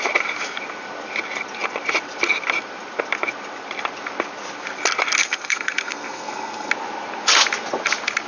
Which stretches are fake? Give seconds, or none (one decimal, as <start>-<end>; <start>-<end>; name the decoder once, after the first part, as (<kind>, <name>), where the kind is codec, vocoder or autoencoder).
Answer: 5.2-6.7 (codec, SNAC)